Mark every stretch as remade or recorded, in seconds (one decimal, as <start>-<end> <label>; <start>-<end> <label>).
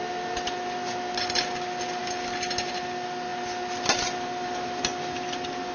0.0-5.7 recorded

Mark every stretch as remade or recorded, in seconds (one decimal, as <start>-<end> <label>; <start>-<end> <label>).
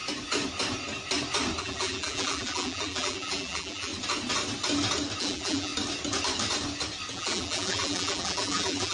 0.0-1.6 recorded; 1.6-3.9 remade; 3.9-5.2 recorded; 5.2-5.7 remade; 5.7-7.1 recorded; 7.1-8.9 remade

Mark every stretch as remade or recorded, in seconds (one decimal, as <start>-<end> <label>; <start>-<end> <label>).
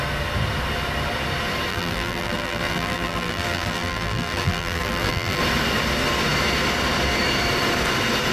0.0-1.7 recorded; 1.7-5.4 remade; 5.4-8.3 recorded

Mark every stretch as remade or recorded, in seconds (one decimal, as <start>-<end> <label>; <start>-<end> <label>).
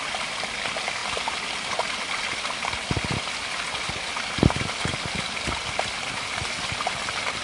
0.0-1.0 recorded; 1.0-1.9 remade; 1.9-4.9 recorded; 4.9-5.6 remade; 5.6-7.4 recorded